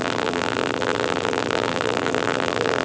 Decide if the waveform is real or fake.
fake